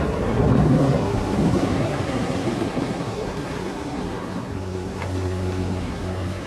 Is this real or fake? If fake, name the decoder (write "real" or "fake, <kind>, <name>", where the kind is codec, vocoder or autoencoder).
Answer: fake, codec, SNAC